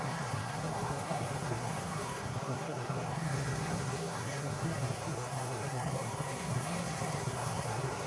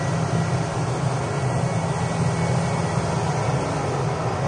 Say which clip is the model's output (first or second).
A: first